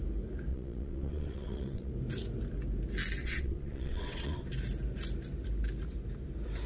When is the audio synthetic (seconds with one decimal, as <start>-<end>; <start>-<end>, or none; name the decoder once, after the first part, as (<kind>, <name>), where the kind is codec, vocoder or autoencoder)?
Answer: 0.5-1.9 (vocoder, WaveNeXt); 3.2-4.4